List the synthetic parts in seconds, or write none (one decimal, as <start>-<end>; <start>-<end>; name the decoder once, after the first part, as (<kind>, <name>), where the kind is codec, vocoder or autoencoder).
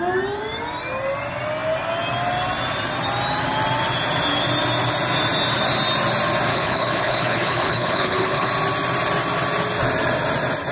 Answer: 6.5-8.5 (codec, HILCodec)